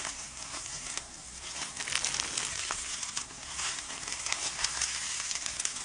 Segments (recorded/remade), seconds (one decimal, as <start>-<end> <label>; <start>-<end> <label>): 0.0-1.8 remade; 1.8-2.5 recorded; 2.5-5.8 remade